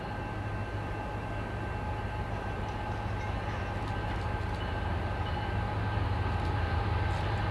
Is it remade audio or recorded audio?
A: recorded